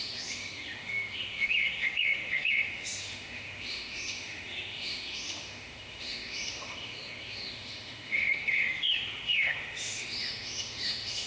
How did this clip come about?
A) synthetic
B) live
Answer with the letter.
A